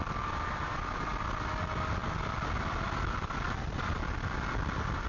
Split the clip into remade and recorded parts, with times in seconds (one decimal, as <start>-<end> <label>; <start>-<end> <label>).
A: 0.0-5.1 recorded